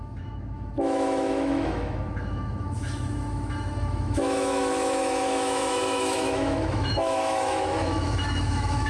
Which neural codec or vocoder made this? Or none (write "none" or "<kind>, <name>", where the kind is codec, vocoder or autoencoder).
autoencoder, DAC-VAE